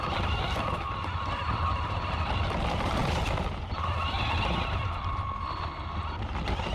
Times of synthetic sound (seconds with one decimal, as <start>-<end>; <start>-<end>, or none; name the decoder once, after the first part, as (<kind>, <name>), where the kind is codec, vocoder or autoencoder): none